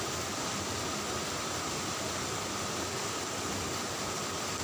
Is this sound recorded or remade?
recorded